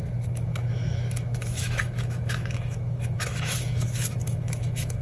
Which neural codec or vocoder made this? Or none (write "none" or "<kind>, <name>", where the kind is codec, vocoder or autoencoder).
autoencoder, DAC-VAE